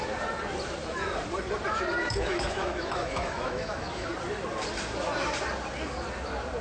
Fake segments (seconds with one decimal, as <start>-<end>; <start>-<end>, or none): 2.0-4.1